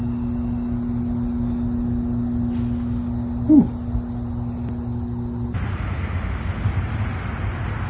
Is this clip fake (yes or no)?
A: no